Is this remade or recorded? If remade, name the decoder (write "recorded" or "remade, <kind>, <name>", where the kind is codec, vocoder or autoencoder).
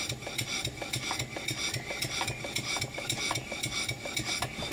recorded